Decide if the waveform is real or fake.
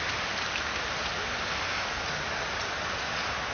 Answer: real